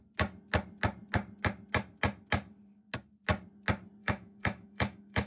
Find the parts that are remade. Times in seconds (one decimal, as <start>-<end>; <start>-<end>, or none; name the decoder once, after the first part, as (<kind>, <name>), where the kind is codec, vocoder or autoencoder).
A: 4.0-5.3 (autoencoder, DAC-VAE)